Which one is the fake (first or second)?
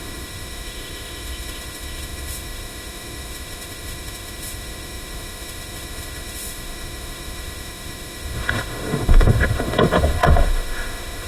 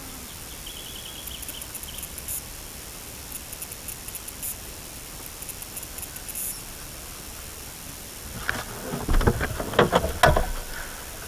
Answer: first